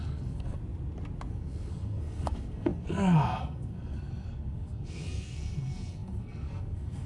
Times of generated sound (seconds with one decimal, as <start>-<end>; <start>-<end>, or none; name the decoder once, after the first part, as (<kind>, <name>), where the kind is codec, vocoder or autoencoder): 0.0-0.6 (codec, SNAC); 1.3-7.1